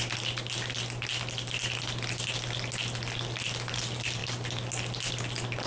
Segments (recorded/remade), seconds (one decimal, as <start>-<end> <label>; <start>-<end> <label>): 0.0-5.7 recorded